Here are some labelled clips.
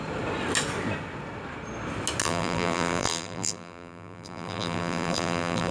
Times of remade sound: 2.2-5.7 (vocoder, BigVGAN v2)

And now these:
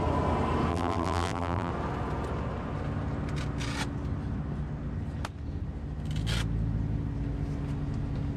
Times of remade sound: 0.7-1.7 (vocoder, BigVGAN v2)

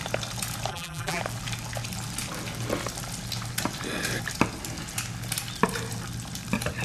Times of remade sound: 0.7-1.2 (vocoder, BigVGAN v2)